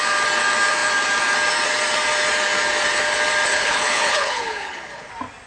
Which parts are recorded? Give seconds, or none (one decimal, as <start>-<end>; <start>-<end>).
0.0-3.5; 5.1-5.5